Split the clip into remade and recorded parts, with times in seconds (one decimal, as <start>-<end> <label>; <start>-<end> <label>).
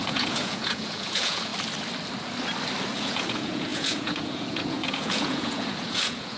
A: 0.0-1.5 remade; 1.5-2.9 recorded; 2.9-6.4 remade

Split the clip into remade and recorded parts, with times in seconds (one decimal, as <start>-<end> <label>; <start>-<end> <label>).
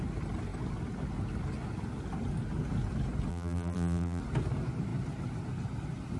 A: 0.0-3.3 recorded; 3.3-4.2 remade; 4.2-6.2 recorded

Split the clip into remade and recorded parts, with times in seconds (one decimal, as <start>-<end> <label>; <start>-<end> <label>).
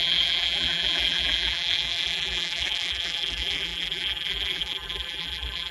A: 0.0-5.7 remade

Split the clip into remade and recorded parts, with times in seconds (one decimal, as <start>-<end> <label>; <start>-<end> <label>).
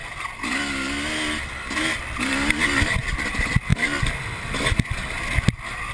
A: 0.0-5.9 recorded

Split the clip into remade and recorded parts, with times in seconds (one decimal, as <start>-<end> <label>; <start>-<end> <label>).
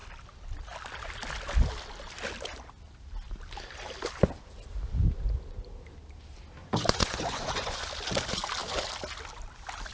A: 0.0-6.6 recorded; 6.6-7.8 remade; 7.8-9.9 recorded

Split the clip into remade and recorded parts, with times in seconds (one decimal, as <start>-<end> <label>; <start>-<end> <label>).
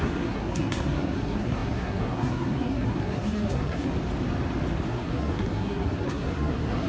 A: 0.0-3.9 remade; 3.9-4.9 recorded; 4.9-6.9 remade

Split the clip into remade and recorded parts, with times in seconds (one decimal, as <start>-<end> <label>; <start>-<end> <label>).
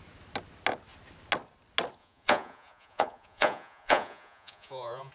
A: 0.0-2.0 recorded; 2.0-5.1 remade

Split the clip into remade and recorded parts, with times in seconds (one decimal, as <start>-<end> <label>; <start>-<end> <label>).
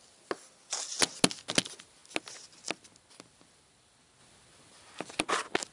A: 0.0-5.7 recorded